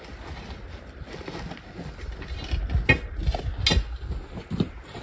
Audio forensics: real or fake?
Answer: real